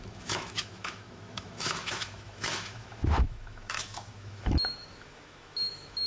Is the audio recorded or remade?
remade